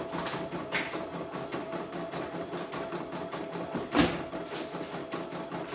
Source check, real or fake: real